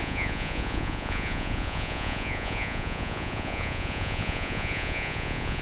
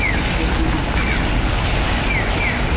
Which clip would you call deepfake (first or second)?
first